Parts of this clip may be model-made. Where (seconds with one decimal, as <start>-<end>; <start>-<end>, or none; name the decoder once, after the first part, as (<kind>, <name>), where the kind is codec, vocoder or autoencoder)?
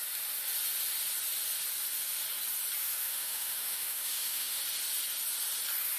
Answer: 2.8-4.6 (autoencoder, DAC-VAE)